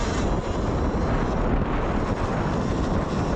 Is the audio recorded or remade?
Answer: recorded